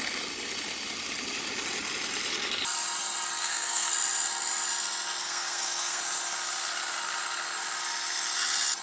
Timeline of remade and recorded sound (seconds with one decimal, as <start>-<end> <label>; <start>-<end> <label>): 0.0-3.4 recorded; 3.4-3.9 remade; 3.9-5.2 recorded; 5.2-6.0 remade; 6.0-8.8 recorded